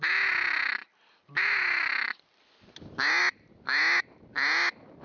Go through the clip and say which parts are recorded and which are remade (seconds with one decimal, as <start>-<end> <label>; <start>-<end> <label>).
0.0-5.0 recorded